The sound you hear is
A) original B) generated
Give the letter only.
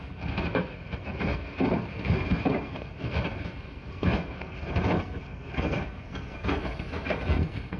B